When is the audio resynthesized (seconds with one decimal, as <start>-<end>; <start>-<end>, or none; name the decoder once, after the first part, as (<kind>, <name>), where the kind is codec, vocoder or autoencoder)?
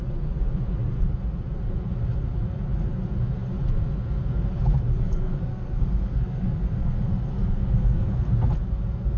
4.9-8.3 (codec, SNAC)